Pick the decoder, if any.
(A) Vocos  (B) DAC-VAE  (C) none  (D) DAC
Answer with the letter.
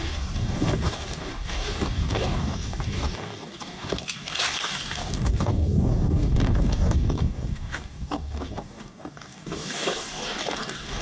D